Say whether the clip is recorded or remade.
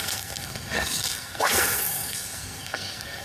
remade